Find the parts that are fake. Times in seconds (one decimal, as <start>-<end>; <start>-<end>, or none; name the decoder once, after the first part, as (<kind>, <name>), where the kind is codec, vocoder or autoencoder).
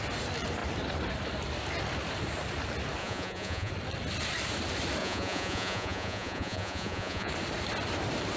3.0-3.7 (vocoder, Vocos); 5.0-7.3